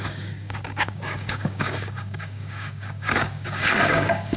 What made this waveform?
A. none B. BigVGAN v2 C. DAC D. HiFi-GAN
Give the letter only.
C